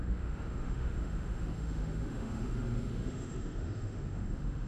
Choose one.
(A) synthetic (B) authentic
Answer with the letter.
A